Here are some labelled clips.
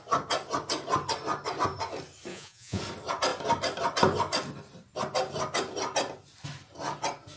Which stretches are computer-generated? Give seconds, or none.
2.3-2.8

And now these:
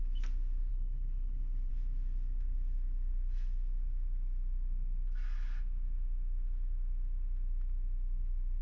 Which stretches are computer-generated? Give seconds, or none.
0.7-1.7

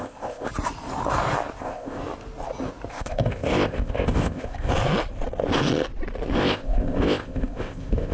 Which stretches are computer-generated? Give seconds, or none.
0.0-0.5; 1.6-2.0; 2.9-4.7; 6.4-8.1

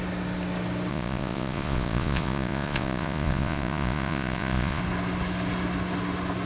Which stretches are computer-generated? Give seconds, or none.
0.9-4.8

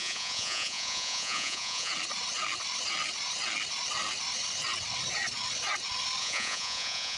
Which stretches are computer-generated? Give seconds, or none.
0.0-1.9; 6.2-7.2

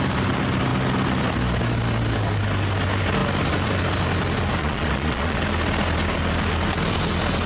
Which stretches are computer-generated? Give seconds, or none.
4.6-5.4